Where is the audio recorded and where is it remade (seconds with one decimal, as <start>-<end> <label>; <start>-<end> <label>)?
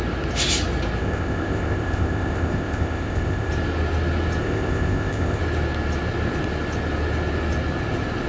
0.0-1.0 recorded; 1.0-3.5 remade; 3.5-4.4 recorded; 4.4-5.4 remade; 5.4-8.3 recorded